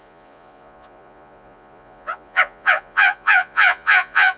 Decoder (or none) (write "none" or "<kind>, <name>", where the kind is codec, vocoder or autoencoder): vocoder, Vocos